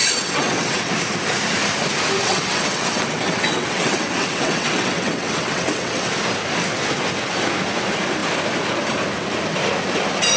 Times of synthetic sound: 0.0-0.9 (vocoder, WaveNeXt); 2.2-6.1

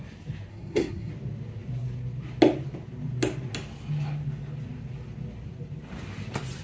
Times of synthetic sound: 0.5-1.1 (codec, SNAC)

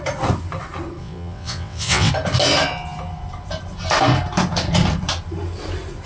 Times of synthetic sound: 1.0-2.1 (vocoder, WaveNeXt)

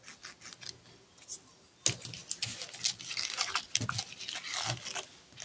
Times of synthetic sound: none